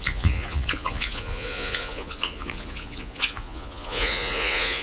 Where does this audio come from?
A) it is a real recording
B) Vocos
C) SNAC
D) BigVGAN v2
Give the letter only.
B